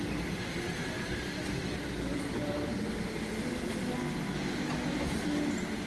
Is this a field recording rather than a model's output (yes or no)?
yes